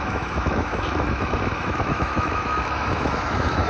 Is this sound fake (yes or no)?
yes